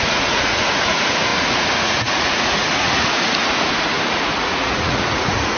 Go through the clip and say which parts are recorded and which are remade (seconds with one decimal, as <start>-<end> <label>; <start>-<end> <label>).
0.0-5.6 remade